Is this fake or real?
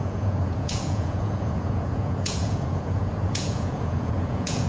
fake